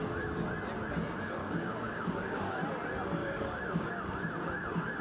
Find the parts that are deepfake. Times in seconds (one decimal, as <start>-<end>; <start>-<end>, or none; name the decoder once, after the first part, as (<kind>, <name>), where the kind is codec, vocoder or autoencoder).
1.4-2.6 (codec, DAC); 3.2-3.9